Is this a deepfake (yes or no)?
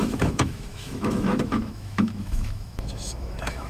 yes